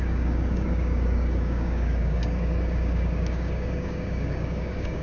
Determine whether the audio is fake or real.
fake